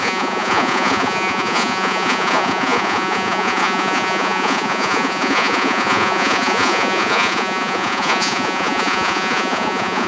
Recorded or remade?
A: remade